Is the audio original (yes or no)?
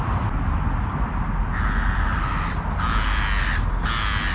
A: yes